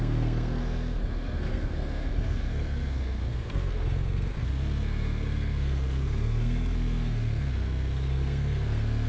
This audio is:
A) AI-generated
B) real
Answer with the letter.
A